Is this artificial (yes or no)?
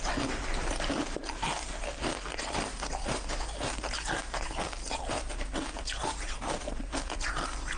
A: yes